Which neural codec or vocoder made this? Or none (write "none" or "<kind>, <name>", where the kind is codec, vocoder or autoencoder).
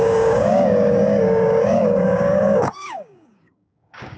codec, DAC